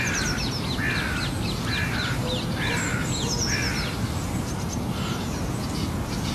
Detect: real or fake real